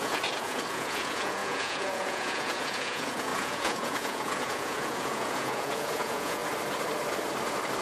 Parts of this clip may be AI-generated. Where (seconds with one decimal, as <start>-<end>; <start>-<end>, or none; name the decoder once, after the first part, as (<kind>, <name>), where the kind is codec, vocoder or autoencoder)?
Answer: 0.0-6.4 (vocoder, Vocos)

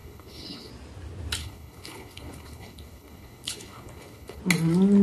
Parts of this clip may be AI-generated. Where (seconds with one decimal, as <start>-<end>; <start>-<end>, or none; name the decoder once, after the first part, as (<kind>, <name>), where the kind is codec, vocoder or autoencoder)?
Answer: 0.0-0.7 (codec, HILCodec); 1.4-4.4

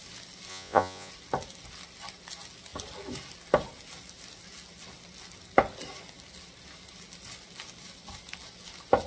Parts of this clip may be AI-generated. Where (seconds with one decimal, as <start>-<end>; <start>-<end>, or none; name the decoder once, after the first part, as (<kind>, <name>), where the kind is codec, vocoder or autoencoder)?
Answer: 0.5-1.1 (vocoder, Vocos)

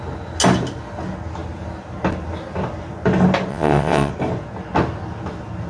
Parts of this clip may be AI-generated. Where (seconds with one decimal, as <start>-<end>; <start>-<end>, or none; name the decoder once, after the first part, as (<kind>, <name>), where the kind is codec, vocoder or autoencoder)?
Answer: 3.5-4.1 (vocoder, WaveNeXt)

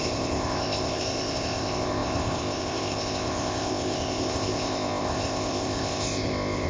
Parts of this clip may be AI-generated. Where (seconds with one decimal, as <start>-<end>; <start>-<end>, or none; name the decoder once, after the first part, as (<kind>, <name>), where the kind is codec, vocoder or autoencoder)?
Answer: 0.0-6.7 (codec, ZipCodec)

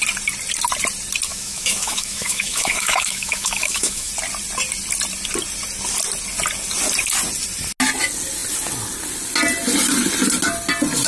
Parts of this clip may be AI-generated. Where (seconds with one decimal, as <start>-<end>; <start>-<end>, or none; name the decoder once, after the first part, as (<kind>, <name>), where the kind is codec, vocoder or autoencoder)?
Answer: 1.3-4.1 (autoencoder, DAC-VAE)

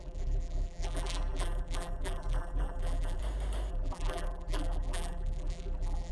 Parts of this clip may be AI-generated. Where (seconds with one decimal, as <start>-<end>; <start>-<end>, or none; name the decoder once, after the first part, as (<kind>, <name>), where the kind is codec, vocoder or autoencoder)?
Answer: 0.0-3.2 (vocoder, BigVGAN v2); 3.7-6.1

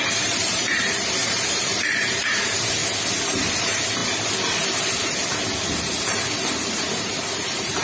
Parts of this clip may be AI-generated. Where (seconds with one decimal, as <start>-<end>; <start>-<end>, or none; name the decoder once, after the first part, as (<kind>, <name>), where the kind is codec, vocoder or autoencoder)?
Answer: 0.0-2.8 (vocoder, BigVGAN v2); 3.6-4.0; 7.0-7.8